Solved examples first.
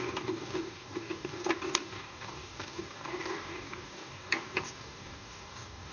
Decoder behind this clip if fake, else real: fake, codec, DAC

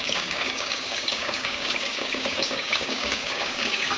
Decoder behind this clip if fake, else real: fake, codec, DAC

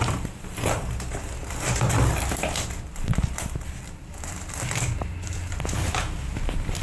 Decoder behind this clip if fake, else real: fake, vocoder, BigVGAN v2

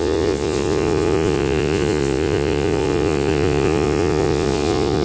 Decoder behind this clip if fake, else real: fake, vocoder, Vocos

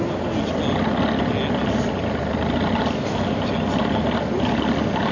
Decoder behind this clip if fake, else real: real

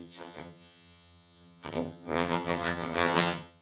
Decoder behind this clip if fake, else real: fake, vocoder, HiFi-GAN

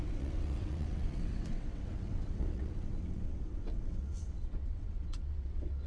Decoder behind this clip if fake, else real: fake, vocoder, WaveNeXt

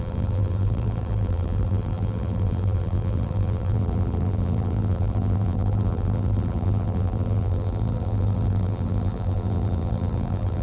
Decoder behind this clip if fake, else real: fake, vocoder, BigVGAN v2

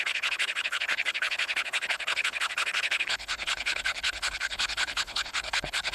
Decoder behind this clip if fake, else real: fake, codec, HILCodec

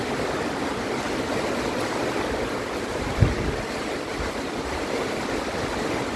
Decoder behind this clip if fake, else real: real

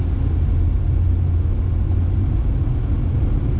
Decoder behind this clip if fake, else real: real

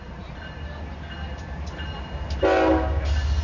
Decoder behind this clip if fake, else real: real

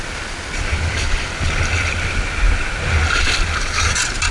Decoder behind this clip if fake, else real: real